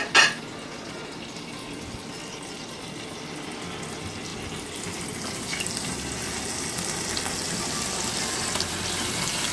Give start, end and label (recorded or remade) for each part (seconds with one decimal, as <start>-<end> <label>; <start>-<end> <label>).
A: 0.0-0.6 recorded; 0.6-1.1 remade; 1.1-9.5 recorded